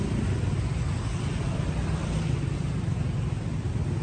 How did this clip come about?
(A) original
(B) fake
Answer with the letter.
A